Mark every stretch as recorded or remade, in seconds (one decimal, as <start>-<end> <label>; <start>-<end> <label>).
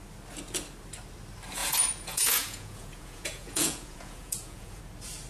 0.0-1.6 recorded; 1.6-4.8 remade; 4.8-5.3 recorded